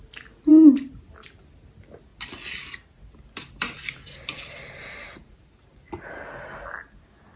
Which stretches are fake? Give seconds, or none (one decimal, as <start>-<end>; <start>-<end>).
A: none